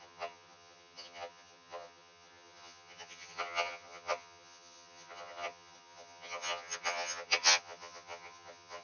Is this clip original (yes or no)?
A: no